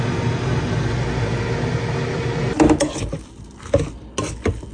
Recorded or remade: recorded